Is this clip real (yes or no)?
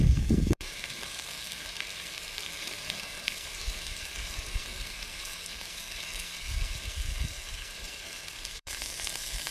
no